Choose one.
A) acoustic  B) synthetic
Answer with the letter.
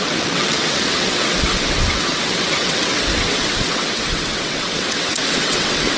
B